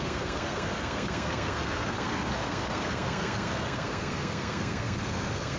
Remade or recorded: remade